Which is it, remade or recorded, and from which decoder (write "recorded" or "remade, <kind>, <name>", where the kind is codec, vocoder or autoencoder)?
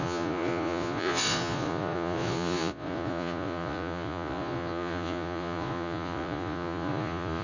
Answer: remade, vocoder, Vocos